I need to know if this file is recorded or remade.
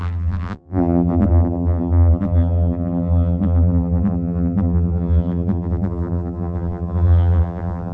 remade